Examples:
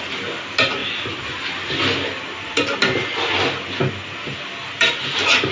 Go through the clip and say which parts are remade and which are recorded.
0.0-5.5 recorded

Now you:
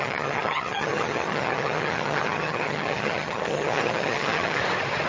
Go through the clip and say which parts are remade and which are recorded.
0.0-4.6 remade; 4.6-5.1 recorded

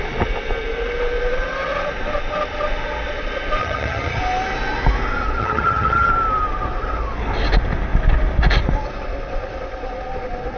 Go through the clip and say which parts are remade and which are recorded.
0.0-3.6 recorded; 3.6-4.2 remade; 4.2-5.4 recorded; 5.4-6.1 remade; 6.1-10.6 recorded